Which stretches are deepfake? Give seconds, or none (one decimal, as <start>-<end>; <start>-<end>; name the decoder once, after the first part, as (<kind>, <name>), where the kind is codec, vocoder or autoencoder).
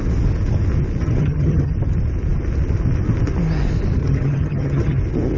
1.0-1.7 (vocoder, HiFi-GAN); 4.0-5.0